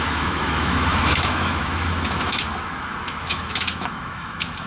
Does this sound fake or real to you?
fake